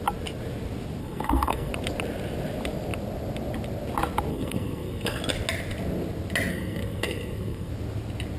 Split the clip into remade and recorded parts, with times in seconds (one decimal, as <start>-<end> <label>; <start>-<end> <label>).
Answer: 0.0-1.0 recorded; 1.0-1.7 remade; 1.7-4.3 recorded; 4.3-5.2 remade; 5.2-6.5 recorded; 6.5-7.7 remade; 7.7-8.4 recorded